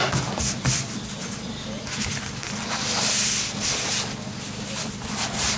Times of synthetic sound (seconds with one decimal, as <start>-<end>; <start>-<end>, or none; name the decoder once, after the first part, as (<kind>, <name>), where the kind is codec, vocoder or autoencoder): 0.0-2.4 (vocoder, BigVGAN v2); 4.8-5.6